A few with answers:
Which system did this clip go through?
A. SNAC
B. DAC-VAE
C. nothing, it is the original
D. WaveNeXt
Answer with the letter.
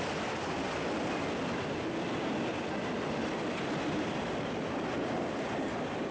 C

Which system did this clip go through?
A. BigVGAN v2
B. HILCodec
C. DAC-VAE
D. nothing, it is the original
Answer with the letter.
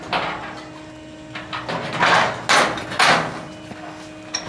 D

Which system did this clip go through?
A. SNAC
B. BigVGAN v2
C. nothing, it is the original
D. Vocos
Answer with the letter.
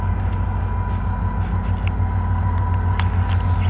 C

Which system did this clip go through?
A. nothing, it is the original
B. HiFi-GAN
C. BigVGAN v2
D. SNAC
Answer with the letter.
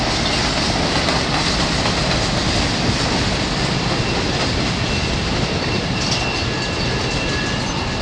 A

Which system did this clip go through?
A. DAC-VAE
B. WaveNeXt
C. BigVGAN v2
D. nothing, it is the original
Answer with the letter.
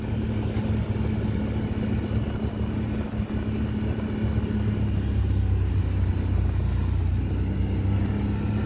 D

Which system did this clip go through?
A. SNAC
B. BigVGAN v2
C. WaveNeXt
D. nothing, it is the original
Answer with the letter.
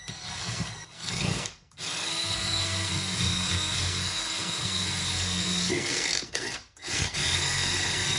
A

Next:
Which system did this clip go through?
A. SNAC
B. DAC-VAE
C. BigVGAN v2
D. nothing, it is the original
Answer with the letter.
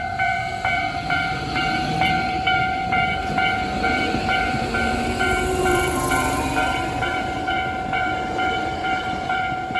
C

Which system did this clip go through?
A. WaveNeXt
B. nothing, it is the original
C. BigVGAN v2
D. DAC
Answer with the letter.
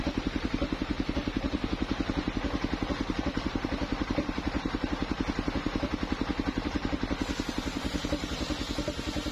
C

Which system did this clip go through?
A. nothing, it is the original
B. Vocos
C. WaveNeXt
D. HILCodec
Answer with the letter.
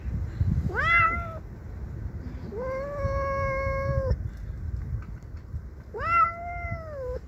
A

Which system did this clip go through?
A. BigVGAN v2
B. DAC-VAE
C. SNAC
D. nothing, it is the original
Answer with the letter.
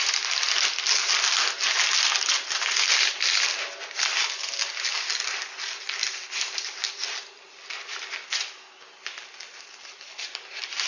D